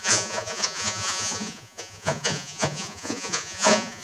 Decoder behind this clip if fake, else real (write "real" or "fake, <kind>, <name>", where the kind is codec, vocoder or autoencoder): fake, vocoder, Vocos